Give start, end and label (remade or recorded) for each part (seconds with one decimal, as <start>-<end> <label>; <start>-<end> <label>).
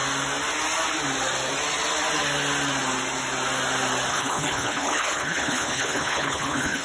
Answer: 0.0-4.1 recorded; 4.1-6.8 remade